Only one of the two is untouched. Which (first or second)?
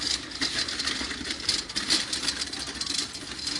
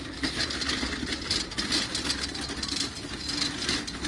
second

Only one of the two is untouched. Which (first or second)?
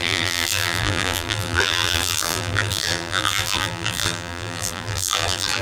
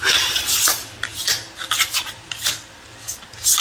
second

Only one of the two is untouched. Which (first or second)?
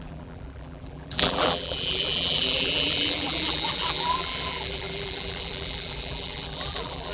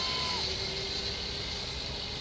second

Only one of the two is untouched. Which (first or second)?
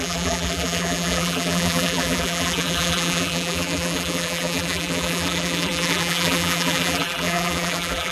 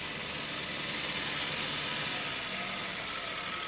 second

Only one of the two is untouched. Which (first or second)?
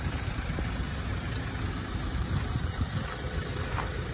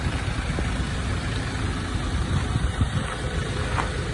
second